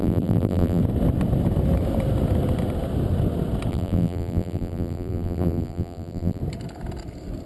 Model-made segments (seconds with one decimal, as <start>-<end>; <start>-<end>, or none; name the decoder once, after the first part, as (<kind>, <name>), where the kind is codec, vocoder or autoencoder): 0.0-0.8 (vocoder, BigVGAN v2); 3.7-6.4